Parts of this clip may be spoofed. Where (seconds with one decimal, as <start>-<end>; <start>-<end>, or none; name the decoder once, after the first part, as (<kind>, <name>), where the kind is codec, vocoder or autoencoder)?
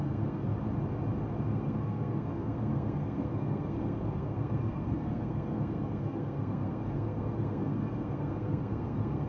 0.0-0.4 (codec, SNAC); 1.4-9.3